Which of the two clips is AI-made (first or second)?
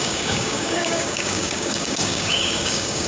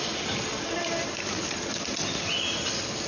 first